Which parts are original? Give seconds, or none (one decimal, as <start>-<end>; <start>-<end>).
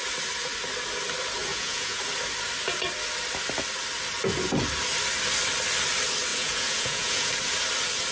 0.0-1.5; 2.0-6.3; 7.3-8.1